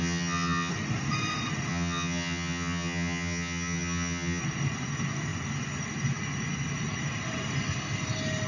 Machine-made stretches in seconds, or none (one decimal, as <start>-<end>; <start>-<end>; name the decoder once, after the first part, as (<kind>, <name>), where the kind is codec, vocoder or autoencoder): 0.0-0.7 (vocoder, HiFi-GAN); 1.7-4.4